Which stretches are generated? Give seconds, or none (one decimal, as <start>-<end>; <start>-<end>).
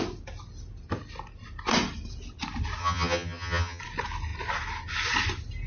2.8-3.8